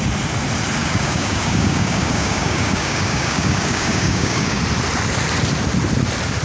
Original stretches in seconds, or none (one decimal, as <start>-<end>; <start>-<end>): 0.0-0.8; 4.6-6.4